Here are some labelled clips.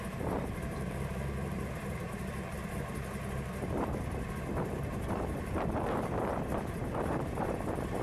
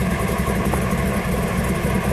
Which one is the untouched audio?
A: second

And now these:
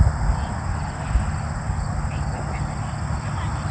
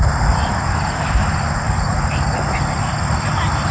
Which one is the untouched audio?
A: first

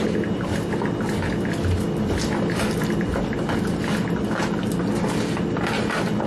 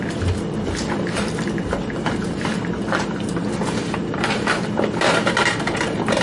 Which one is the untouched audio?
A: first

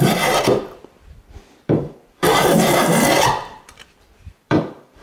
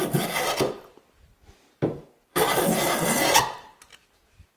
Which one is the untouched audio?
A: second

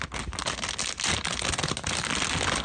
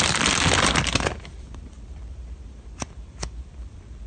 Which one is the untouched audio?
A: first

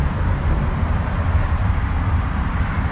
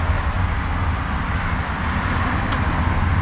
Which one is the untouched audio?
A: second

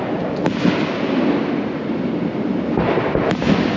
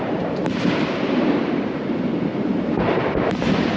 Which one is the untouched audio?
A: first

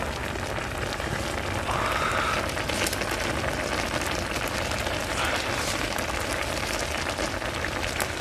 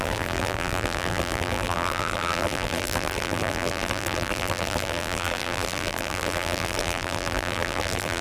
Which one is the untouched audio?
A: first